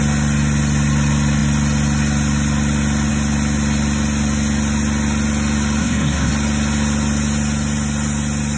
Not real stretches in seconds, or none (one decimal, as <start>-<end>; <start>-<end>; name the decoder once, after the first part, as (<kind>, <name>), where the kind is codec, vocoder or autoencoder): 5.8-6.3 (codec, SNAC)